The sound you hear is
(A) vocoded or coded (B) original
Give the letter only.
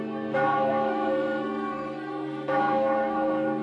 A